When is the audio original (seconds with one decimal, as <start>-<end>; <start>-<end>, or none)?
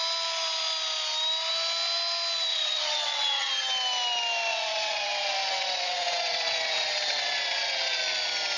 0.0-2.5; 3.5-4.5; 8.0-8.6